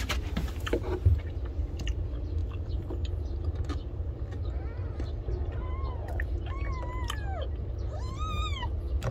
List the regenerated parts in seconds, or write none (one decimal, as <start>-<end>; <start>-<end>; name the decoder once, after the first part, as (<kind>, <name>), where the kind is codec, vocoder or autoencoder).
none

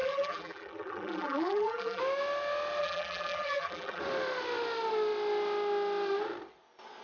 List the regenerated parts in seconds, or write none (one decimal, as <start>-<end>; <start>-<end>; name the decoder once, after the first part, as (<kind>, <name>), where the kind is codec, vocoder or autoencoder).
0.0-2.0 (vocoder, BigVGAN v2); 2.8-4.0